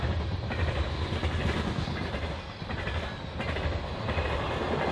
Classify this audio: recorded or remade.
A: recorded